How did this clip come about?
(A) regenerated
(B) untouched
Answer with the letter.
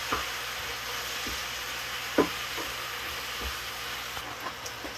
B